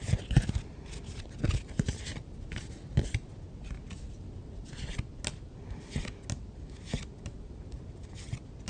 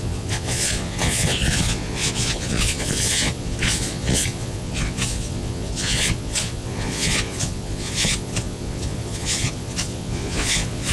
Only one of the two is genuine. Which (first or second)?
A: first